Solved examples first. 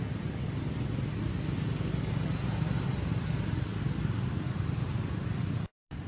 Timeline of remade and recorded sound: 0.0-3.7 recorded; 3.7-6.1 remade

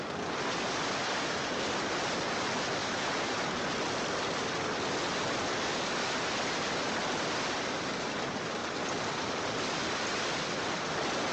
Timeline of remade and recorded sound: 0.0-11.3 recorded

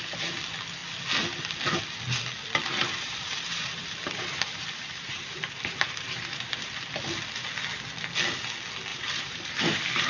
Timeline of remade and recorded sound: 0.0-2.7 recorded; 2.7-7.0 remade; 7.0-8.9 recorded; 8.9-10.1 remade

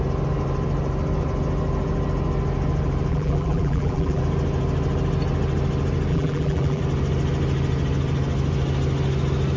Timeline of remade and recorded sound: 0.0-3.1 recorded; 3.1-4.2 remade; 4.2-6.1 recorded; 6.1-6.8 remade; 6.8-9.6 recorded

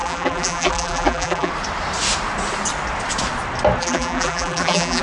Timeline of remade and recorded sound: 0.0-1.5 remade; 1.5-3.8 recorded; 3.8-5.0 remade